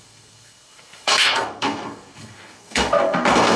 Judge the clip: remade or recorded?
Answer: remade